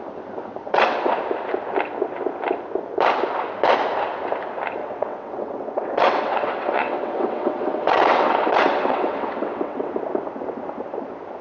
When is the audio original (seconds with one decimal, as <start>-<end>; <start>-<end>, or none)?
0.0-0.6; 1.1-4.8; 9.9-11.4